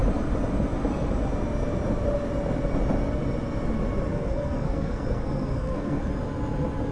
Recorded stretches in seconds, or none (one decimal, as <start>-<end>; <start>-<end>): 0.0-4.1; 6.1-6.9